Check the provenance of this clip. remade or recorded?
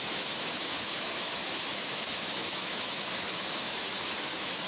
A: remade